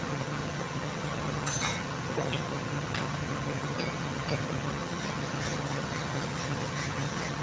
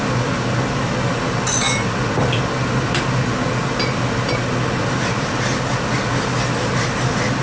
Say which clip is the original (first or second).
second